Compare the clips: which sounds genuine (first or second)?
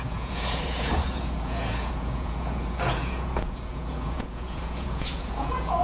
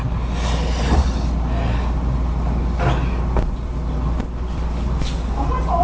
second